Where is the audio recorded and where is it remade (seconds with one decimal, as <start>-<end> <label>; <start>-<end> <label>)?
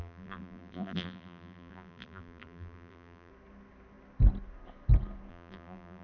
0.0-3.3 remade; 3.3-5.3 recorded; 5.3-6.0 remade